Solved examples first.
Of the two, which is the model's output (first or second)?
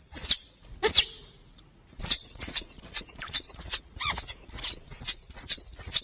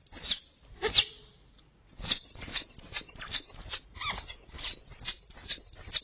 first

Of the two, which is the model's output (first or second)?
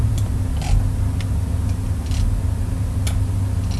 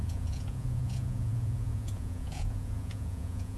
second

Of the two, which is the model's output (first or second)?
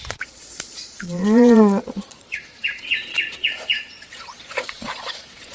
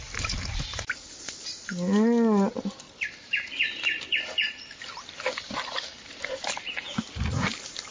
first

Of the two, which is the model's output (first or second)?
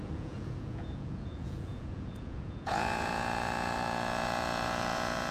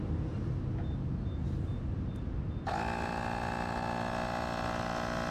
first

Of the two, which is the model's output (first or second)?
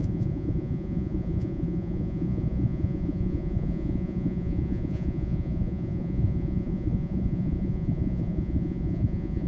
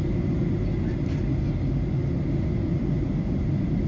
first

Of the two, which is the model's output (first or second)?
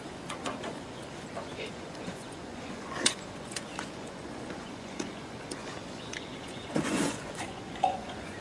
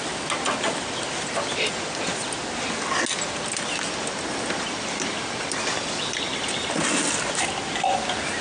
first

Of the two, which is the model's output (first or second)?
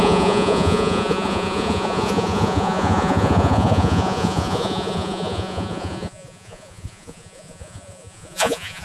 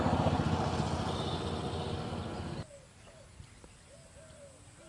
first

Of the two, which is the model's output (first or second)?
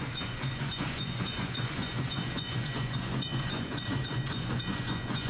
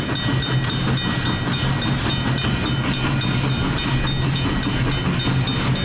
first